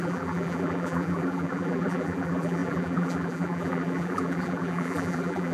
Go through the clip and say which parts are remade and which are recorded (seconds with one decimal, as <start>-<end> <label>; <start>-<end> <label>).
0.0-5.5 remade